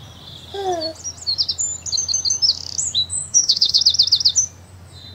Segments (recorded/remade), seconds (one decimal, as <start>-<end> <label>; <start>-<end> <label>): 0.0-3.1 recorded; 3.1-3.8 remade; 3.8-5.1 recorded

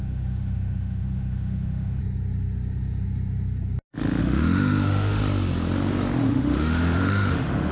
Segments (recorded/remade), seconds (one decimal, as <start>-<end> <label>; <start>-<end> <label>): 0.0-2.0 remade; 2.0-4.2 recorded; 4.2-5.2 remade; 5.2-6.3 recorded; 6.3-7.7 remade

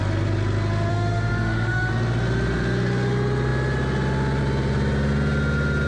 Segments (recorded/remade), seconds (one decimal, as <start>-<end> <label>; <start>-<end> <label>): 0.0-0.9 recorded; 0.9-1.9 remade; 1.9-5.9 recorded